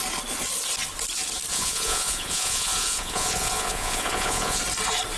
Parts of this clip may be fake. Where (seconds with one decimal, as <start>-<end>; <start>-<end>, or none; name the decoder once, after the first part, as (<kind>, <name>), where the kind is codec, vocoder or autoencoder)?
1.5-4.6 (vocoder, Vocos)